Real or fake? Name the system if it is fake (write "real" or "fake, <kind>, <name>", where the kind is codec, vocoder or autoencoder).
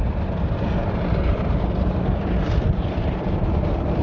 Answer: fake, vocoder, BigVGAN v2